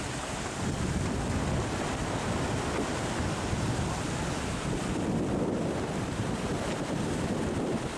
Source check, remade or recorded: recorded